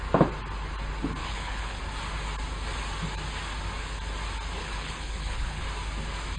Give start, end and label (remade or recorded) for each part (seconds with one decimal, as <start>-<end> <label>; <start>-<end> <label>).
0.0-1.2 recorded; 1.2-1.8 remade; 1.8-4.6 recorded; 4.6-5.6 remade; 5.6-6.4 recorded